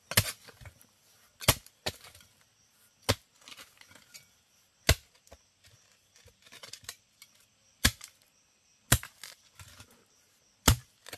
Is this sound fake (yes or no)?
no